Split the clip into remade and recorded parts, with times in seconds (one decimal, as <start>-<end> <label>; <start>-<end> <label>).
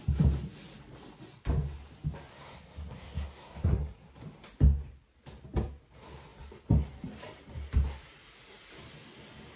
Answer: 0.0-2.3 recorded; 2.3-4.1 remade; 4.1-9.6 recorded